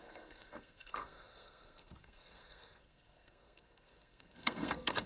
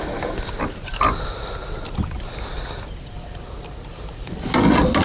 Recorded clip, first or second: second